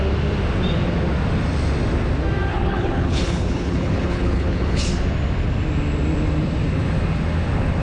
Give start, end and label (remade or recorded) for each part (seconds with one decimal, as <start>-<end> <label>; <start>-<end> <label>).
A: 0.0-2.5 recorded; 2.5-4.8 remade; 4.8-7.8 recorded